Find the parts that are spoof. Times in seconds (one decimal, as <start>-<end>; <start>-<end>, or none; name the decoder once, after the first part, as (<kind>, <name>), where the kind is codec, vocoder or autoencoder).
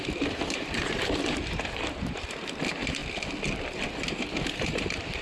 0.0-3.0 (vocoder, BigVGAN v2); 3.7-5.2